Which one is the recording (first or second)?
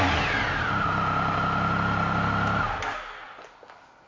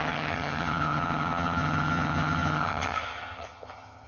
first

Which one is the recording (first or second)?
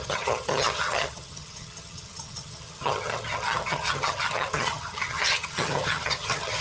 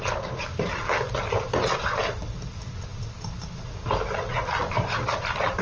second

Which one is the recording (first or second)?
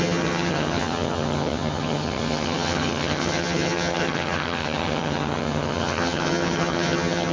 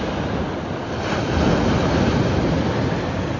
second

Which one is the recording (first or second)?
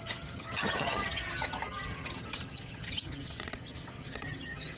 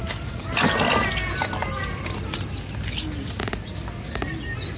second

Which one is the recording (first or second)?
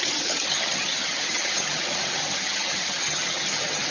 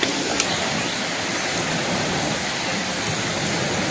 second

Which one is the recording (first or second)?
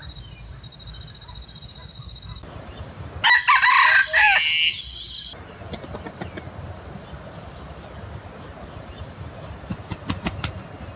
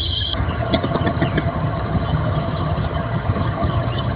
first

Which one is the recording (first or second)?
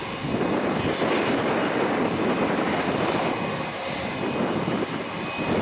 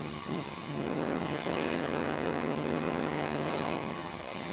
first